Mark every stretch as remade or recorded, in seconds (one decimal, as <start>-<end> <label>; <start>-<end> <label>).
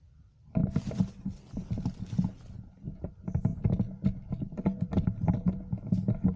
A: 0.0-6.4 recorded